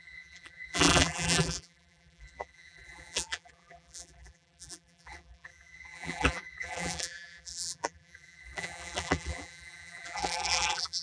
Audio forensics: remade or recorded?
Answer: remade